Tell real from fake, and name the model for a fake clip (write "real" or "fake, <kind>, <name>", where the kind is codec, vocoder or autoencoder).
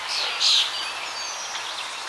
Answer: real